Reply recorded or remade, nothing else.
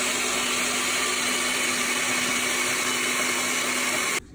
recorded